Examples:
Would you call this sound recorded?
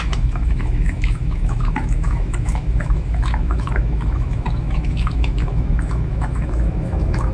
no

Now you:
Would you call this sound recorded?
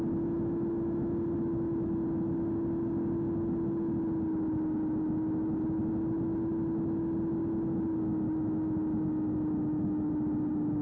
yes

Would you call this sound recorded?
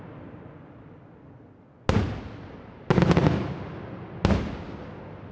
yes